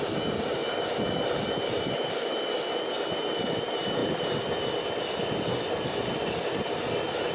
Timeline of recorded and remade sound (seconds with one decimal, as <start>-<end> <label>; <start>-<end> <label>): 0.0-7.3 recorded